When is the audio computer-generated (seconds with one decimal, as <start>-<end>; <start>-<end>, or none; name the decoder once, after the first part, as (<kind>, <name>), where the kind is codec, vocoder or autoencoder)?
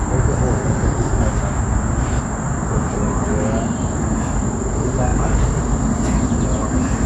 none